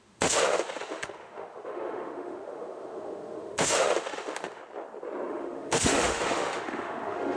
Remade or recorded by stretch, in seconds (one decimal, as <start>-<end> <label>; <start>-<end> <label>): 0.0-4.6 remade; 4.6-5.3 recorded; 5.3-7.4 remade